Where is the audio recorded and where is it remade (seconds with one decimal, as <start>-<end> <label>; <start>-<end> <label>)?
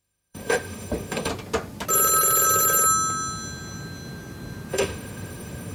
0.0-1.3 remade; 1.3-4.7 recorded; 4.7-5.7 remade